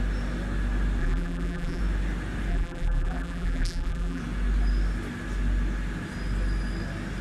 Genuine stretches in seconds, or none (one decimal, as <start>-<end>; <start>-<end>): 0.0-1.0; 1.8-2.5; 4.2-7.2